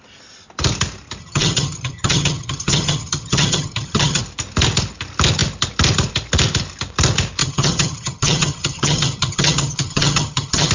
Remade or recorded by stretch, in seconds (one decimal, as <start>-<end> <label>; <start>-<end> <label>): 0.0-1.2 recorded; 1.2-4.2 remade; 4.2-7.4 recorded; 7.4-10.7 remade